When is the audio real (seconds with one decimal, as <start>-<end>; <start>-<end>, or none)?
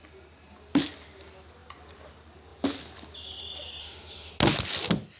0.0-3.8; 4.3-5.2